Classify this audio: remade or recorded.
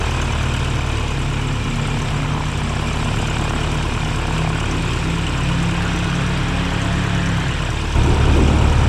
recorded